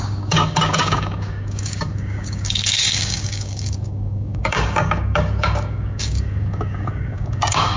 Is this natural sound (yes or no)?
no